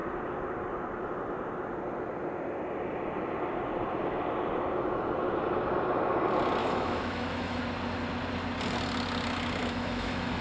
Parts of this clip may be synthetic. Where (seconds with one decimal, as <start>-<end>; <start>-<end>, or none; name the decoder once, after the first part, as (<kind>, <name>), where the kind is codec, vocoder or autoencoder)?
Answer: 6.6-7.6 (autoencoder, DAC-VAE); 9.6-10.4